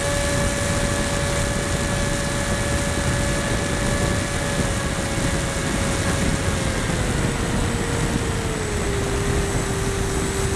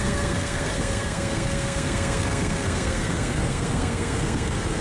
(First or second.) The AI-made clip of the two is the second